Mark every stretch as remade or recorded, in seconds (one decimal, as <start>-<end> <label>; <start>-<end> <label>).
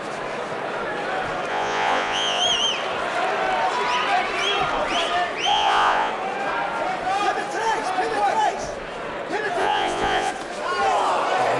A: 0.0-1.5 recorded; 1.5-2.4 remade; 2.4-5.5 recorded; 5.5-6.1 remade; 6.1-9.6 recorded; 9.6-10.3 remade; 10.3-11.6 recorded